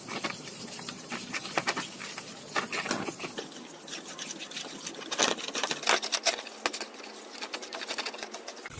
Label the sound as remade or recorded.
recorded